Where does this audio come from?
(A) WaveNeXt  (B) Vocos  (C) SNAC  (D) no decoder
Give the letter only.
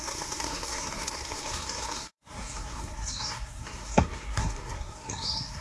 C